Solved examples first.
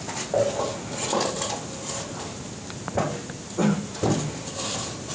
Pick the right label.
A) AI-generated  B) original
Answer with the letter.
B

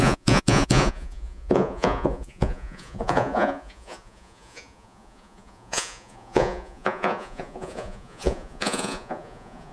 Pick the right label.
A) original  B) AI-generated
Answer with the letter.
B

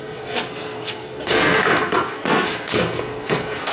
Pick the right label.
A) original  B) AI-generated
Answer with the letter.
B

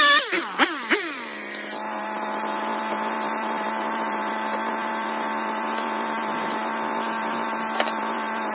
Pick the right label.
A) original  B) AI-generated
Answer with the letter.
B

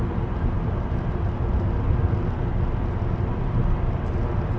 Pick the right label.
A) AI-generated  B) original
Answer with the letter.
B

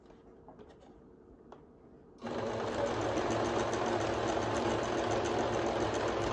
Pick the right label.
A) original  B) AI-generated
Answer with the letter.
A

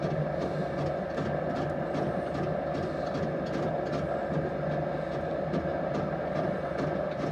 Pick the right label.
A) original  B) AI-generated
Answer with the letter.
A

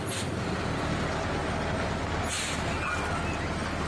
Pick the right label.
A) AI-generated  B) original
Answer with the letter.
B